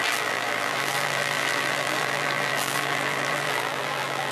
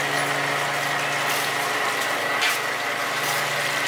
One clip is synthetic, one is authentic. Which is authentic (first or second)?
second